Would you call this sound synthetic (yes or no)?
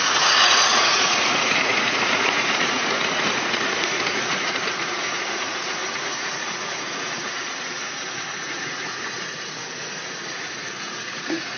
yes